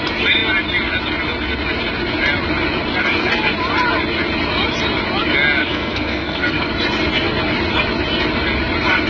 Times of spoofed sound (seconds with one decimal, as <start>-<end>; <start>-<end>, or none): 5.6-6.7

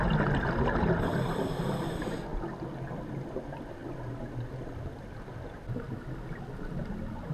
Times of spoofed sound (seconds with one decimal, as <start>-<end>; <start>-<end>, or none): none